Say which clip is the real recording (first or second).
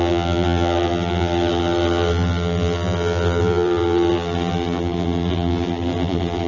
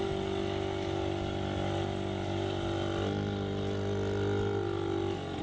second